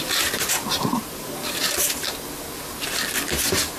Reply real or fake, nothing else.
fake